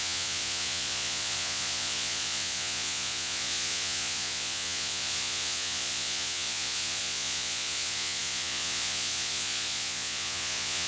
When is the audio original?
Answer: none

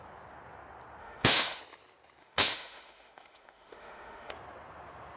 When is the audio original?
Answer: 0.0-1.0; 1.6-2.2; 4.3-5.2

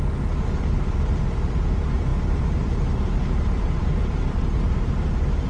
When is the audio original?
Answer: none

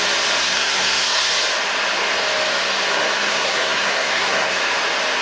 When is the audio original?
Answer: 0.0-0.4; 1.3-2.9; 4.6-5.2

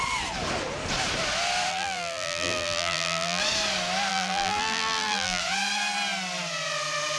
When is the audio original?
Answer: 0.0-1.7; 3.4-4.1; 5.4-7.2

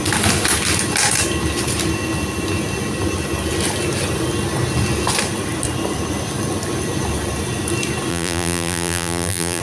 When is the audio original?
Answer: 0.0-8.1